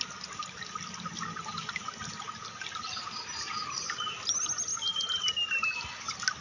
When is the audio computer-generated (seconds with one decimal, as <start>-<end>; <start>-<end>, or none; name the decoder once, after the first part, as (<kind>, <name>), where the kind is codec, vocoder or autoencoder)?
none